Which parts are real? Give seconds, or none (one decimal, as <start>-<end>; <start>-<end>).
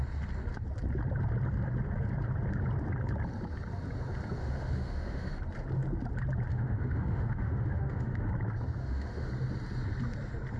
0.0-4.4; 5.3-6.5; 8.3-8.8; 9.3-10.6